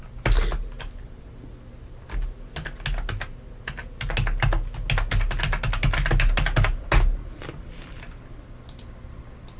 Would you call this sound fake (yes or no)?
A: no